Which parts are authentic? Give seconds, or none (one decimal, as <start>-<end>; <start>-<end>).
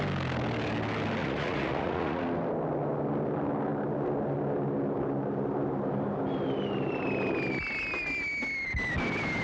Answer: 0.0-1.2; 2.2-9.4